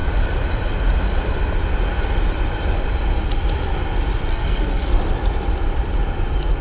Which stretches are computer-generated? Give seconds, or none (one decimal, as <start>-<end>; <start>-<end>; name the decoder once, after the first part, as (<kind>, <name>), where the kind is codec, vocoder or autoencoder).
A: 4.3-4.9 (codec, SNAC)